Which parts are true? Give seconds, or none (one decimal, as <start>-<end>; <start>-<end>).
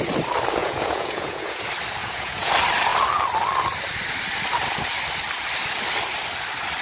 0.0-0.6; 1.6-2.0; 2.5-6.8